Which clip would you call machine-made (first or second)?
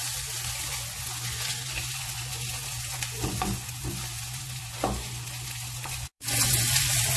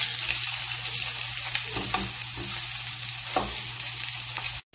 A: first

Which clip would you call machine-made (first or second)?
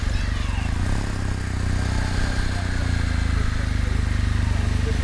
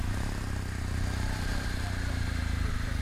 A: second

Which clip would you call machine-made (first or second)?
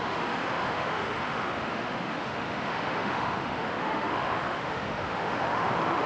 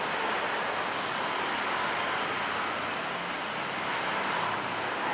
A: first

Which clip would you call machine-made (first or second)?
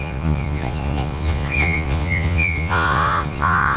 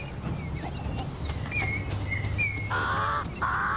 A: first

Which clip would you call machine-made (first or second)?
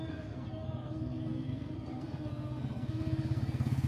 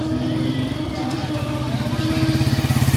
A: first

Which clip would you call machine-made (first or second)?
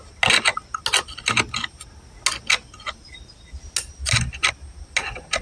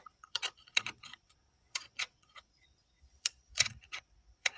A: second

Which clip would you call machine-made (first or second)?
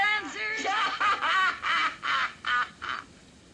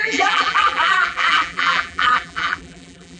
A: second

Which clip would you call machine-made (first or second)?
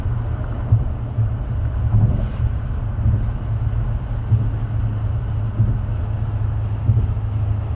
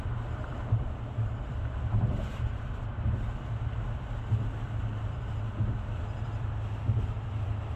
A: second